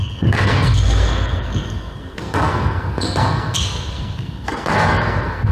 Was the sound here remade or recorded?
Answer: remade